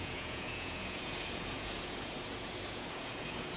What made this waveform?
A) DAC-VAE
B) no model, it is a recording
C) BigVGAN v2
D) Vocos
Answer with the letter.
D